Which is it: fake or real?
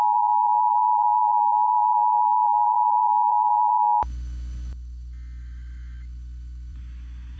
fake